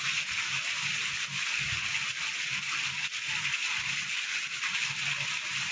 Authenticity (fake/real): real